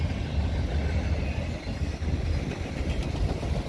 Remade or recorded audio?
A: recorded